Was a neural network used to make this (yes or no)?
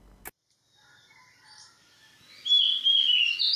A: no